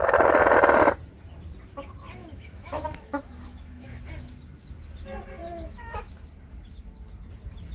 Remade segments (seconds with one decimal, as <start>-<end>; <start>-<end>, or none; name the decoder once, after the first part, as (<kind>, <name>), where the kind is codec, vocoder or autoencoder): 2.2-4.0 (autoencoder, DAC-VAE); 5.4-6.1